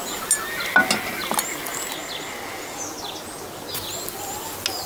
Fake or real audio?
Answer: real